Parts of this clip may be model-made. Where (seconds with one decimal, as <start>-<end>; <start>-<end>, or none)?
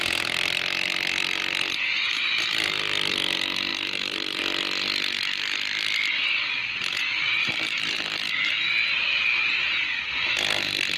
3.7-4.4; 7.4-8.3